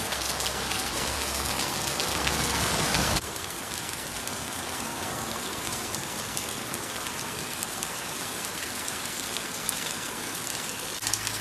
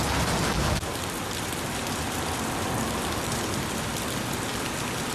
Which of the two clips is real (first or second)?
second